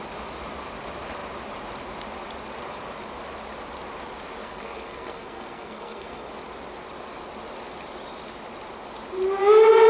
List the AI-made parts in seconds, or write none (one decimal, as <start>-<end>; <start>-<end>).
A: 4.4-6.3